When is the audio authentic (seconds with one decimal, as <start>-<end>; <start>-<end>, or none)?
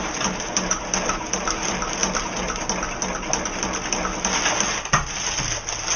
0.0-6.0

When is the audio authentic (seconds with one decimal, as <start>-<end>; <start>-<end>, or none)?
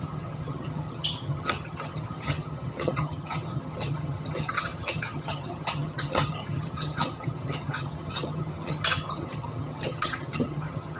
none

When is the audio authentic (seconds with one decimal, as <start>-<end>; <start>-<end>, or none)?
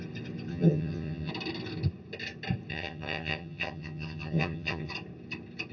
0.0-0.5; 1.3-2.7; 4.9-5.7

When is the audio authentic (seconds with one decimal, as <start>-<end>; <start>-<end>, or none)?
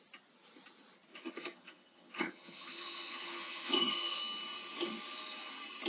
0.0-1.1; 4.2-5.9